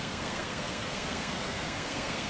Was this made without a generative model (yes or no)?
no